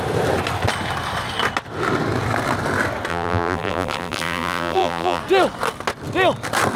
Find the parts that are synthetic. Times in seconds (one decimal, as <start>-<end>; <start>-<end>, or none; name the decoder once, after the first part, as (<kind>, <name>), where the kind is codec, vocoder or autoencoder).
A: 3.1-5.2 (vocoder, BigVGAN v2)